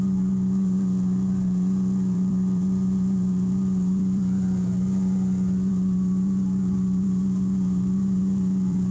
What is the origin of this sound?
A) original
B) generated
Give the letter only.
B